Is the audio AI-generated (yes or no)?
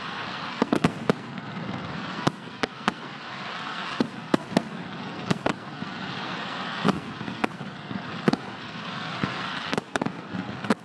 yes